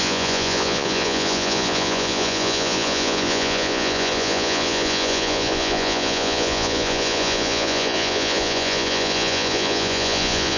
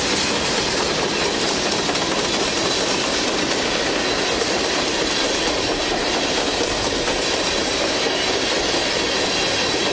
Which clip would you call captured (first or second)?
second